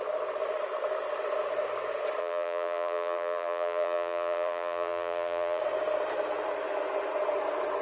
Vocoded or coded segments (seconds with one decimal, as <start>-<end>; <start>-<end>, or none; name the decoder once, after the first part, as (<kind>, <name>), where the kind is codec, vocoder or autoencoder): 2.2-5.6 (vocoder, BigVGAN v2)